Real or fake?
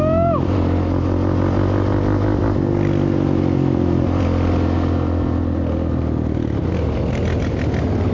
real